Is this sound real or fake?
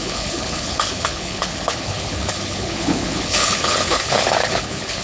fake